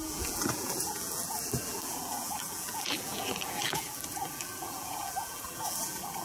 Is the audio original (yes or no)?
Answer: no